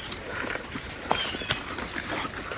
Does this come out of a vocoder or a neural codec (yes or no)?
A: no